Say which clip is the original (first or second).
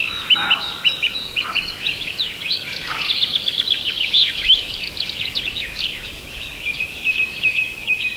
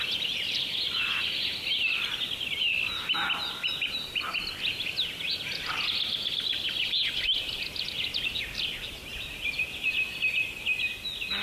second